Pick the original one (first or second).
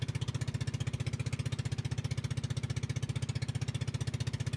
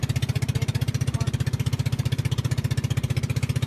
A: first